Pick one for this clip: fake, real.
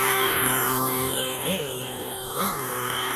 fake